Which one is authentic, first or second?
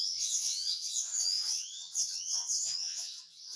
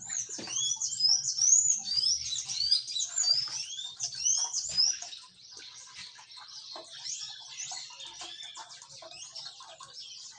second